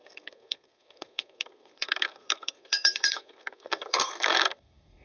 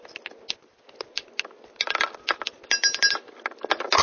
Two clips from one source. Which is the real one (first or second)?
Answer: second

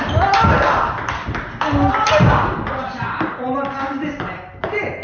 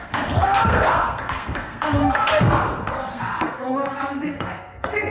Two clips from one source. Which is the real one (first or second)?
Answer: first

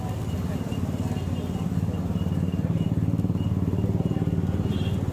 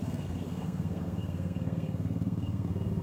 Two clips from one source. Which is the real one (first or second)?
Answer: first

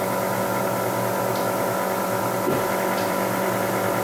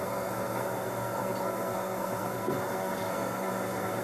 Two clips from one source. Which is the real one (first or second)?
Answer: first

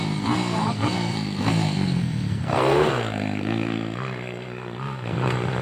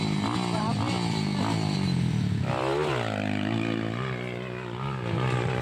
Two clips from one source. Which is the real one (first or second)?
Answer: second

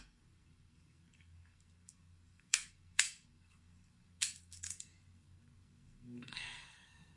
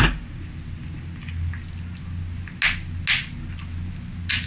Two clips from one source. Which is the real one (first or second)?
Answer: second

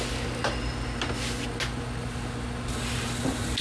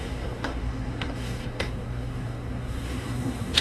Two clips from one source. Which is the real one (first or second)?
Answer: first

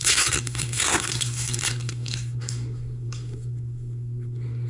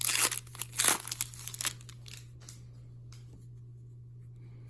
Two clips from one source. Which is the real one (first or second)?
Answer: second